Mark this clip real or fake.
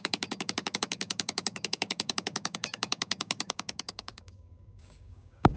fake